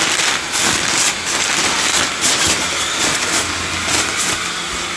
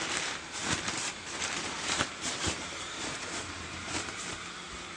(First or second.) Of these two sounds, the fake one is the second